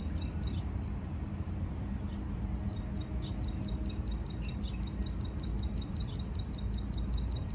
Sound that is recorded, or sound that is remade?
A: recorded